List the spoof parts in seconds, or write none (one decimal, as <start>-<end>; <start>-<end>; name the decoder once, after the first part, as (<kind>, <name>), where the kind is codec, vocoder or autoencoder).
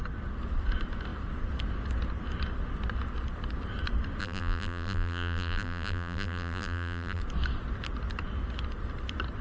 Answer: 4.2-7.2 (vocoder, BigVGAN v2)